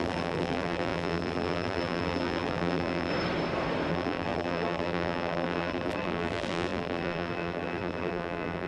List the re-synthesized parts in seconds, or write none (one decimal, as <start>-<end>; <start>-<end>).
0.0-3.1; 3.9-8.7